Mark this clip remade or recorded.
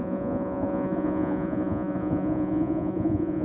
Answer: remade